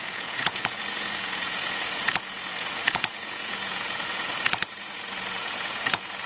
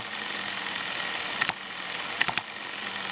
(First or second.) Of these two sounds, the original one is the second